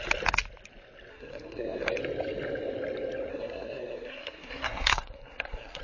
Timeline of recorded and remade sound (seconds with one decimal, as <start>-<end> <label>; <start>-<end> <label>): 0.0-1.1 recorded; 1.1-2.0 remade; 2.0-3.3 recorded; 3.3-5.8 remade